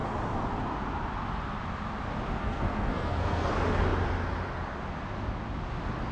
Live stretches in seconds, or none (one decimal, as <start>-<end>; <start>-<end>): 0.0-2.4; 3.5-6.1